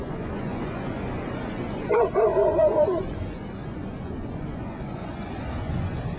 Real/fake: fake